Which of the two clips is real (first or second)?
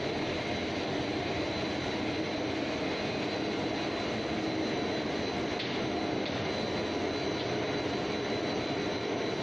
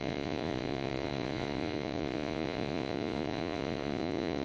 first